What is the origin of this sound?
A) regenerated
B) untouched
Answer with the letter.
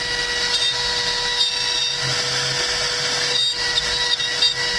B